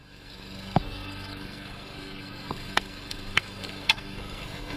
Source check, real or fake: fake